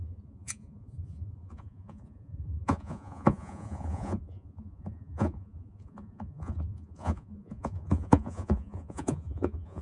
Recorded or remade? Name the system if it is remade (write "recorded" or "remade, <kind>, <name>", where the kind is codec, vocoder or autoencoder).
remade, vocoder, Vocos